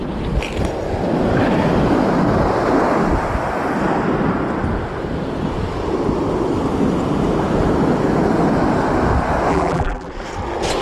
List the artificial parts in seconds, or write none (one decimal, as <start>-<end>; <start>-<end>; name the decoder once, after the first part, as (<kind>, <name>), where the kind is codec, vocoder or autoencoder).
9.5-10.1 (vocoder, BigVGAN v2)